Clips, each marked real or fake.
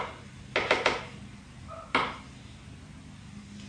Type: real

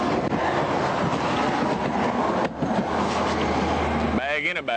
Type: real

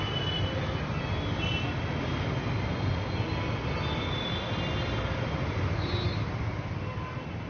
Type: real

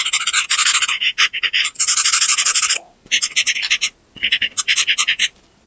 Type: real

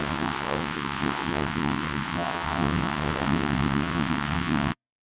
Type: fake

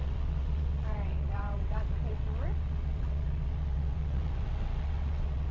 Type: fake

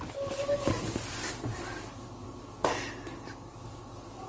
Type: real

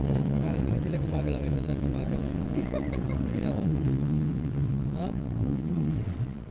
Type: fake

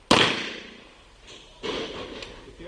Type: real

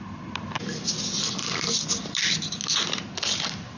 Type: real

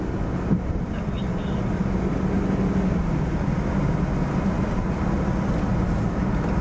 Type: real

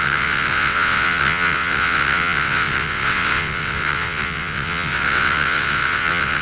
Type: fake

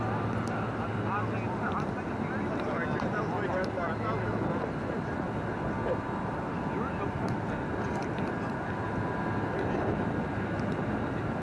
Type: real